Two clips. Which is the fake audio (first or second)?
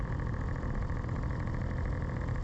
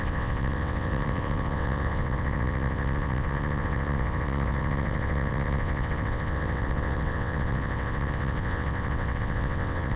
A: second